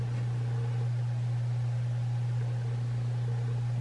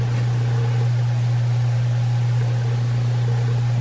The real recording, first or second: first